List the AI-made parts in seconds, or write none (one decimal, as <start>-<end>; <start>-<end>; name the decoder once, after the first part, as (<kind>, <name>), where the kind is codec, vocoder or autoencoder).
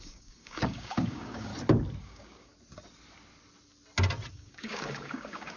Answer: 0.0-1.5 (codec, DAC); 2.0-2.5; 4.3-5.6